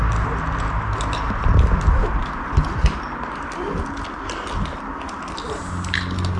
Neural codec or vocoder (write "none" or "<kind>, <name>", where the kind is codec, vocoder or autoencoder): none